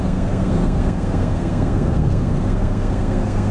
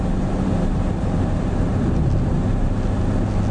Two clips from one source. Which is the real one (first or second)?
second